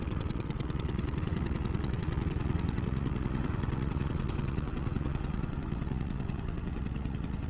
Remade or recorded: remade